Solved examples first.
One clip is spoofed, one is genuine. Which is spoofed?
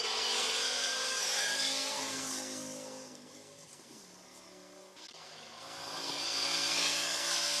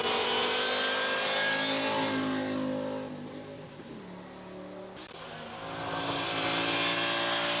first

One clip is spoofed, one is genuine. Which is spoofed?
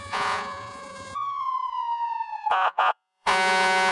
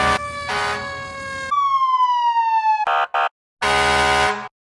first